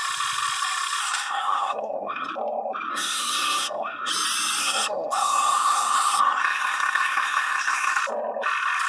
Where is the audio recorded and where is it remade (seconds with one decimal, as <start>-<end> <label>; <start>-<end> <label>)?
0.0-1.0 recorded; 1.0-2.3 remade; 2.3-2.9 recorded; 2.9-4.1 remade; 4.1-4.6 recorded; 4.6-8.0 remade; 8.0-8.9 recorded